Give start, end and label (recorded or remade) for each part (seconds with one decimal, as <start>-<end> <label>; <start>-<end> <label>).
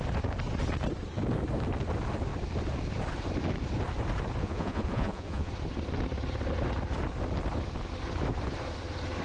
0.0-4.4 recorded; 4.4-5.5 remade; 5.5-9.2 recorded